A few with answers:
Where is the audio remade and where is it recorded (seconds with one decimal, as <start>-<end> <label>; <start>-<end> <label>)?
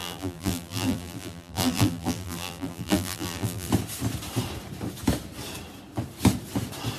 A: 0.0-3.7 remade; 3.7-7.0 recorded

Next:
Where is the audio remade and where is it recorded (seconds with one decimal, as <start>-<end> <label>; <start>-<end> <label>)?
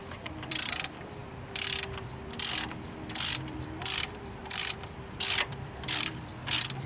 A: 0.0-1.2 remade; 1.2-2.0 recorded; 2.0-6.9 remade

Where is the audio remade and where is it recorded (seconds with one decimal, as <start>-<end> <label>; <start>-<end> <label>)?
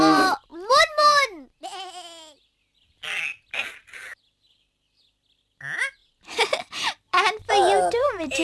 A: 0.0-6.0 remade; 6.0-6.8 recorded; 6.8-8.4 remade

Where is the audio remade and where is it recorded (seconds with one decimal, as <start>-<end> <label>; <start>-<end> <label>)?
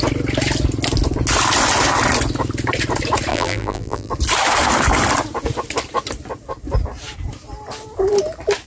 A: 0.0-3.3 recorded; 3.3-4.1 remade; 4.1-8.7 recorded